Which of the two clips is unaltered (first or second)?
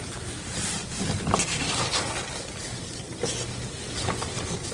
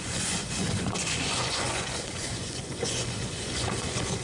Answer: first